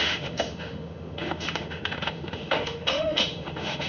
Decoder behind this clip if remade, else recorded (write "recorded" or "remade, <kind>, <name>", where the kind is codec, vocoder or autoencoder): remade, autoencoder, DAC-VAE